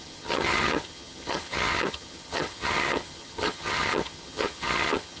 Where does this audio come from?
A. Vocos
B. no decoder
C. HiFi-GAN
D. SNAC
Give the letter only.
C